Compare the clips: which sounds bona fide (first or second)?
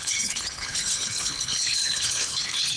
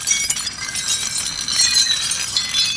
second